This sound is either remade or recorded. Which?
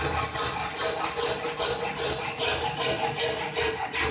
recorded